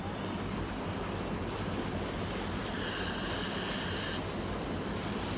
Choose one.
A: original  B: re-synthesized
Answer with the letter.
A